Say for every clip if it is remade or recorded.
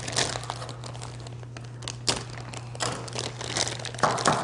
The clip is recorded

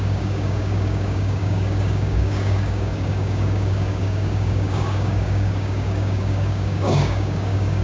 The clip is remade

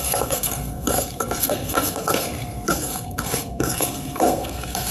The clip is remade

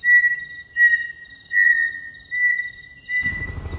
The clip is recorded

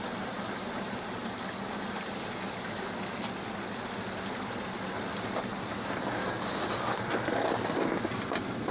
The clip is recorded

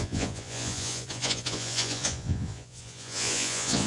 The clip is remade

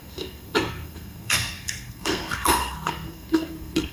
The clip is remade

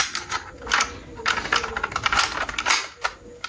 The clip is recorded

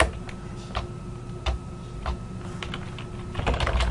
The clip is recorded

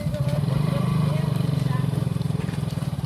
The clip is remade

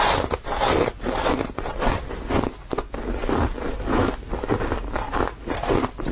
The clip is recorded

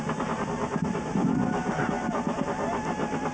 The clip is recorded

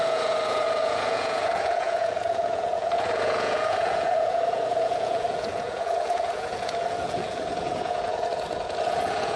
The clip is remade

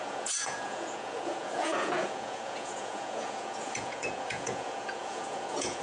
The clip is remade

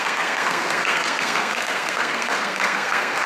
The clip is remade